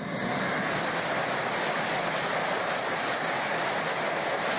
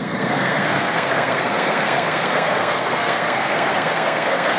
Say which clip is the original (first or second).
first